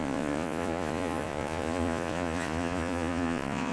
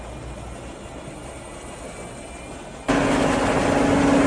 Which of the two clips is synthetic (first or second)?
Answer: first